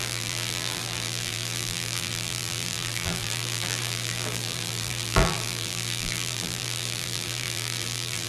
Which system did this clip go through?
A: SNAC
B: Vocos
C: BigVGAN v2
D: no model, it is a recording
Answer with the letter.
C